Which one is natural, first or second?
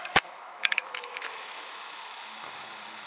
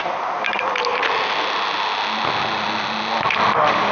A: second